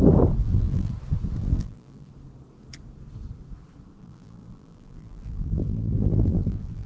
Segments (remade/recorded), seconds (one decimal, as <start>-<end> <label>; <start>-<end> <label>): 0.0-0.4 recorded; 0.4-0.9 remade; 0.9-1.4 recorded; 1.4-2.1 remade; 2.1-4.0 recorded; 4.0-6.9 remade